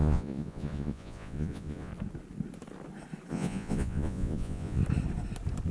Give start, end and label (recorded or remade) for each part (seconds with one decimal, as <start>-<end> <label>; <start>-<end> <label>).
0.0-1.9 remade; 1.9-3.3 recorded; 3.3-4.8 remade; 4.8-5.7 recorded